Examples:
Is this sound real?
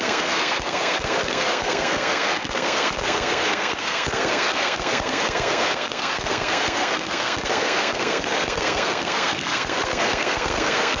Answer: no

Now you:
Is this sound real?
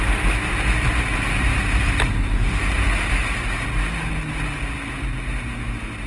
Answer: yes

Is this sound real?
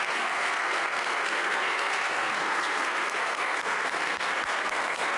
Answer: no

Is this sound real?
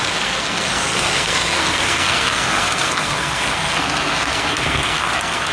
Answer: no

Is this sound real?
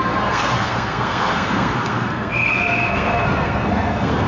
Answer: no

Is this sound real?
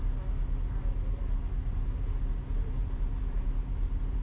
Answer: yes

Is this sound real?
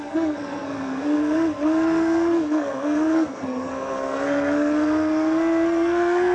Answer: no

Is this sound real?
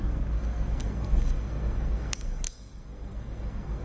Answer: no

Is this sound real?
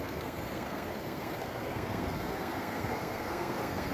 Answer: no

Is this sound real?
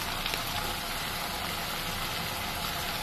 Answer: yes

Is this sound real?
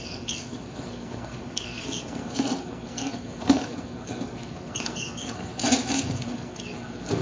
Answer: no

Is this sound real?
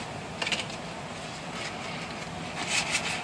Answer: yes